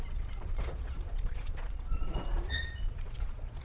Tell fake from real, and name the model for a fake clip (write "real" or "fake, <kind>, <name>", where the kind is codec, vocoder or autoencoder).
fake, vocoder, Vocos